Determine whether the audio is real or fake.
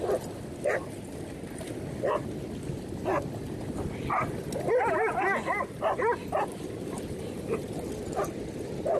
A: real